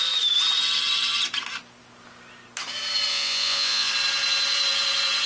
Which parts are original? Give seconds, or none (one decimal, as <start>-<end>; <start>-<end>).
0.0-3.1; 3.9-5.3